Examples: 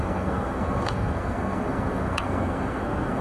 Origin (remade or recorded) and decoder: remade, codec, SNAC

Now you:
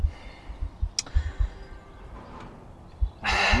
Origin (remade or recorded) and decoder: recorded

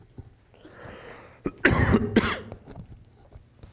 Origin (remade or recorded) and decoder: recorded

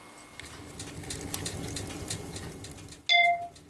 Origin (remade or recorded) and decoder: recorded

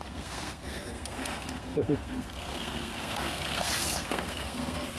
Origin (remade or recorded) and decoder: remade, codec, SNAC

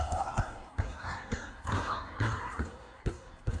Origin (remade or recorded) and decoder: remade, codec, SNAC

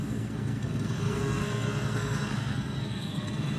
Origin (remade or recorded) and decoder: remade, codec, SNAC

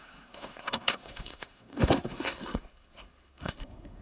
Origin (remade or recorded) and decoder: remade, codec, SNAC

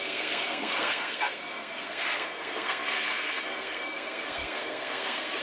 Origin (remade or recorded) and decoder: remade, codec, SNAC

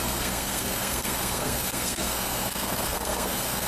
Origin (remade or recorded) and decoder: remade, codec, SNAC